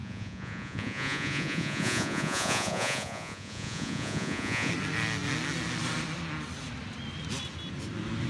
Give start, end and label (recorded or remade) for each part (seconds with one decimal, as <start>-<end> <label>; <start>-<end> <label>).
0.0-4.7 remade; 4.7-8.3 recorded